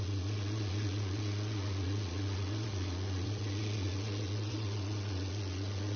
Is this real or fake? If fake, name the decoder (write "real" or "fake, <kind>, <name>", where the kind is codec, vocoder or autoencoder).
fake, vocoder, Vocos